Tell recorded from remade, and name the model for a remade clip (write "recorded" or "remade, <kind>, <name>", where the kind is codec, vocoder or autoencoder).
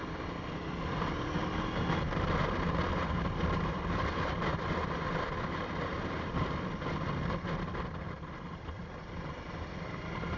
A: recorded